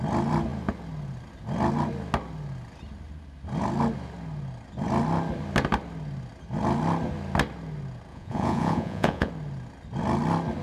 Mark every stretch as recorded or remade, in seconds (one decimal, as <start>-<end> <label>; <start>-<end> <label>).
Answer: 0.0-8.1 recorded; 8.1-9.3 remade; 9.3-10.6 recorded